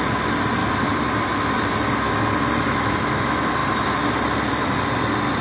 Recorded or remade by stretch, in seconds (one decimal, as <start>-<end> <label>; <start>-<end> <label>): 0.0-3.6 remade; 3.6-4.5 recorded; 4.5-5.4 remade